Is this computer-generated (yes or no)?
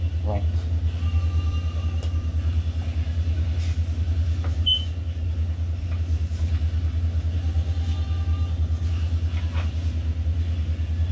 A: no